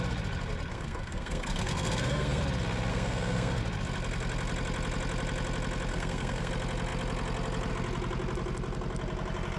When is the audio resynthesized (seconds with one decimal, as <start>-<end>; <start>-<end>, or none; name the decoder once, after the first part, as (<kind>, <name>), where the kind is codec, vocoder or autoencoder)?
0.7-2.4 (codec, SNAC); 2.9-3.6; 5.9-6.5

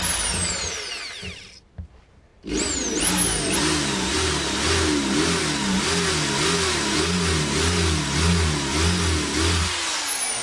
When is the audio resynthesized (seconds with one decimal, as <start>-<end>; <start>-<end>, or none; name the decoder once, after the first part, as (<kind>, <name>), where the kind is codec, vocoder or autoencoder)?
none